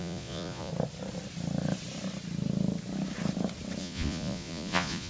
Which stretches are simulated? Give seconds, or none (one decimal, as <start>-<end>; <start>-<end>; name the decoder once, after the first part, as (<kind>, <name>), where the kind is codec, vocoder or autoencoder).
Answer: 0.0-0.7 (vocoder, Vocos); 3.8-5.1